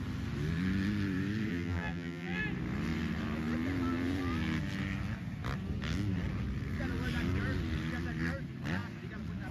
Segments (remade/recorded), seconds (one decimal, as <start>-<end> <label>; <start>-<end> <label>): 0.0-1.5 recorded; 1.5-2.4 remade; 2.4-9.5 recorded